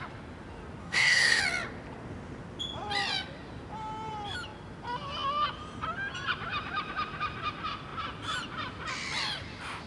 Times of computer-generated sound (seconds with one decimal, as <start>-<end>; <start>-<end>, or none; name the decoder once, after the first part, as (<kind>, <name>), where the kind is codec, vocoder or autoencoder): 0.8-1.4 (codec, SNAC)